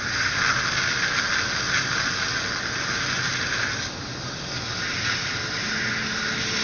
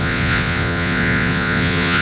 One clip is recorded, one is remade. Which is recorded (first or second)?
first